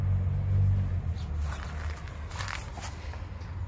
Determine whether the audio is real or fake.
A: real